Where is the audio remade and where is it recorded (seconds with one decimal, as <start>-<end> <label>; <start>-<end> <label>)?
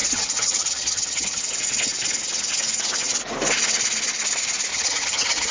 0.0-1.4 remade; 1.4-4.7 recorded; 4.7-5.5 remade